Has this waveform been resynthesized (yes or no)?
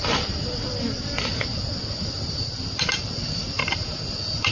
no